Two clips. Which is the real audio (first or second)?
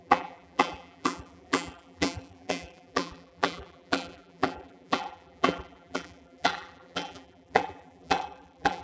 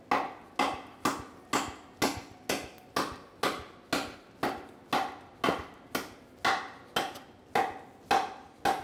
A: second